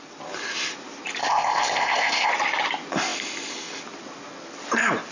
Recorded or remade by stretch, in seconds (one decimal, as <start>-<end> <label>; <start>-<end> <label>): 0.0-1.2 recorded; 1.2-2.3 remade; 2.3-5.1 recorded